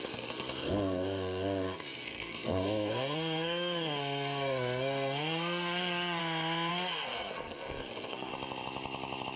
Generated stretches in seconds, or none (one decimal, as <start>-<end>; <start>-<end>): 0.0-6.2; 6.7-8.3